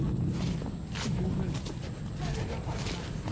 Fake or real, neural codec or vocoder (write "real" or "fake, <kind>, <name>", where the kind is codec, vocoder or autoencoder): real